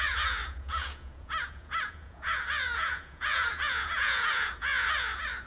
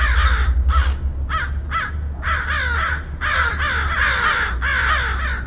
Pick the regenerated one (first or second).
first